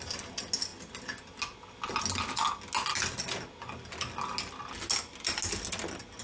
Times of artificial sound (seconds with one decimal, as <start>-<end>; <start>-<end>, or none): none